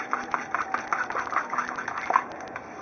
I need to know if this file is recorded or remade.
recorded